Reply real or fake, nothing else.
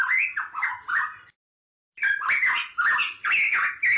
real